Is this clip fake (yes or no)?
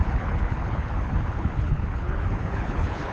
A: yes